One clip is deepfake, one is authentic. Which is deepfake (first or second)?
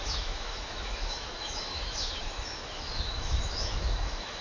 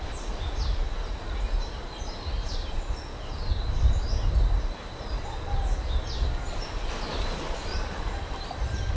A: first